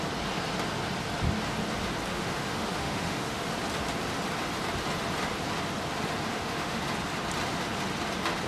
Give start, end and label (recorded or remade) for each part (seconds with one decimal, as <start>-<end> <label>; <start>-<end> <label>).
0.0-2.1 recorded; 2.1-3.4 remade; 3.4-6.3 recorded; 6.3-6.8 remade; 6.8-8.5 recorded